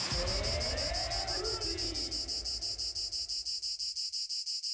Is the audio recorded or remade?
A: recorded